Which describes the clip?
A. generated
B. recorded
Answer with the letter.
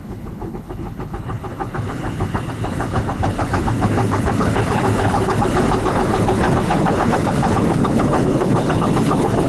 A